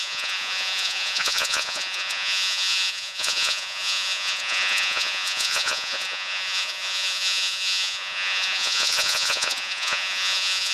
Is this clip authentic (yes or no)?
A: no